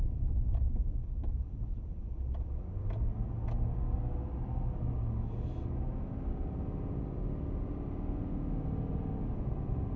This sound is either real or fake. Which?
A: real